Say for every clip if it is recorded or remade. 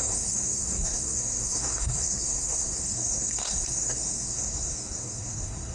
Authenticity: remade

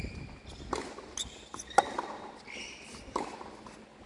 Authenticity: recorded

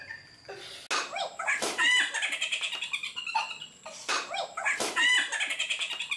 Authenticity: recorded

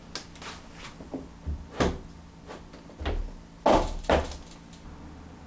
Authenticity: recorded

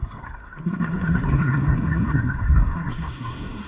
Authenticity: remade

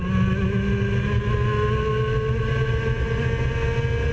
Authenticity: recorded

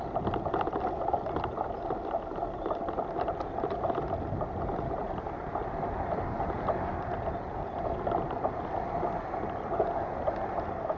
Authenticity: recorded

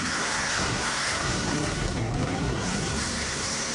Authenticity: remade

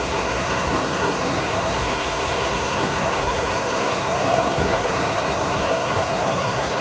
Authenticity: remade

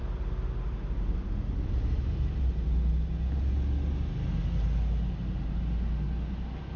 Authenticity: recorded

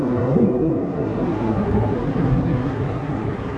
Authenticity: remade